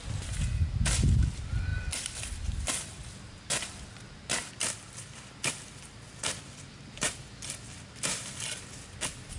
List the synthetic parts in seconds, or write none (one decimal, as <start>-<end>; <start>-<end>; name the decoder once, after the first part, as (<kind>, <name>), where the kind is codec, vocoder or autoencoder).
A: 1.7-2.7 (vocoder, BigVGAN v2); 4.4-7.2

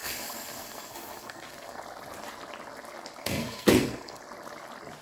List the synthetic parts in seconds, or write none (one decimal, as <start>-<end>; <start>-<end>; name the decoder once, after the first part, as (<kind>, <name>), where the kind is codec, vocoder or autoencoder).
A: 0.0-1.8 (codec, SNAC); 3.2-4.2